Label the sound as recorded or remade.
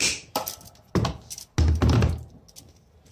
recorded